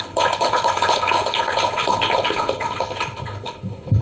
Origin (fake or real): fake